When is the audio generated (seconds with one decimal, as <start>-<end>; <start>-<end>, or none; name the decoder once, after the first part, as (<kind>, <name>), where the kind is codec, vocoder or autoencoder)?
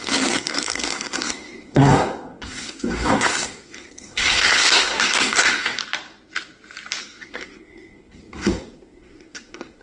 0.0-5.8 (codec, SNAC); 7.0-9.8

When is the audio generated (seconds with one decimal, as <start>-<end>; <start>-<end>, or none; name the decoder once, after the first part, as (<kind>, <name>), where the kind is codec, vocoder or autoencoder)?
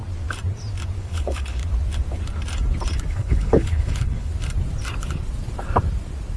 1.0-1.6 (codec, HILCodec); 3.1-4.3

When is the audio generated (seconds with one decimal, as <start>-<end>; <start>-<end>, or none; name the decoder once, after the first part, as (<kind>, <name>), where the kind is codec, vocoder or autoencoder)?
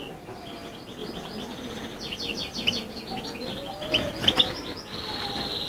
none